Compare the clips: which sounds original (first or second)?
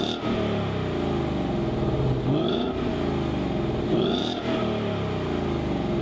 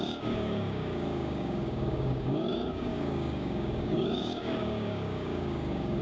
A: first